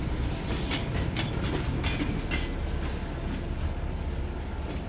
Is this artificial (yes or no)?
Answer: no